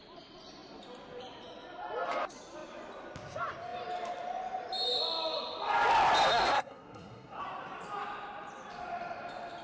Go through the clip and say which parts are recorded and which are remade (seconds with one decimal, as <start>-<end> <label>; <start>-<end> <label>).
0.0-6.3 recorded; 6.3-7.4 remade; 7.4-9.6 recorded